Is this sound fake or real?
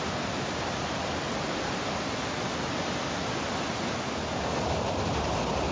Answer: real